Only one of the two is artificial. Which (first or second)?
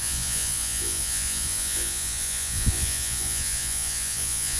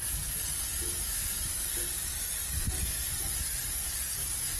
first